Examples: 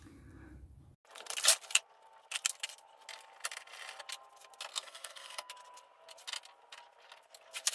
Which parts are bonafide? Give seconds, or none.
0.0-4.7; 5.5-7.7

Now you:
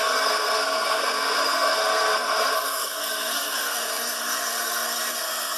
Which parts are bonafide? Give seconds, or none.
none

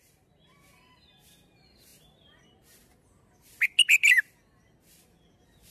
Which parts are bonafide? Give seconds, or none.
0.0-5.7

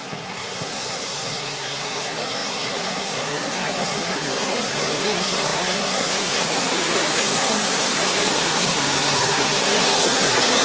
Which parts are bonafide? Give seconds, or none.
none

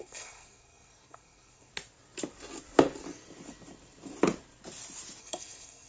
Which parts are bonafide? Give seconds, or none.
1.7-5.2

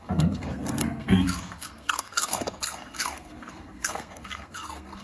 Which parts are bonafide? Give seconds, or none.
none

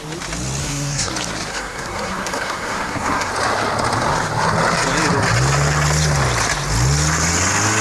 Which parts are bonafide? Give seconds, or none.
0.0-0.6; 1.1-1.5; 3.3-7.8

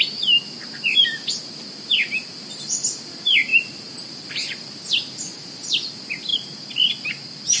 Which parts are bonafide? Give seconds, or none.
0.0-7.6